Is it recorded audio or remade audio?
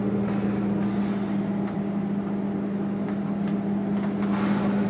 recorded